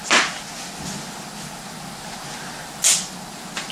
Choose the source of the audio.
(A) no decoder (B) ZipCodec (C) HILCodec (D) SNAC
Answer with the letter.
A